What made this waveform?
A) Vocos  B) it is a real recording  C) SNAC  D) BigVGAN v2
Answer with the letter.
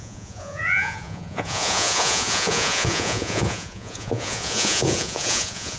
A